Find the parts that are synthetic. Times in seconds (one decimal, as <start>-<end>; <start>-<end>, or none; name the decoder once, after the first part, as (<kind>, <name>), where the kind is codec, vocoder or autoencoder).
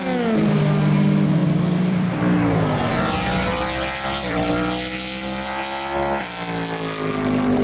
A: 1.4-2.2 (vocoder, BigVGAN v2)